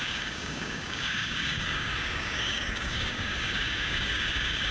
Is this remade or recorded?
remade